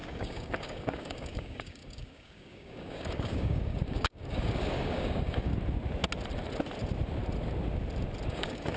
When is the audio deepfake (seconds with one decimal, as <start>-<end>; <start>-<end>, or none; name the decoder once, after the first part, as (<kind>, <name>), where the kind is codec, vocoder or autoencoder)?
0.0-5.5 (codec, DAC); 8.3-8.8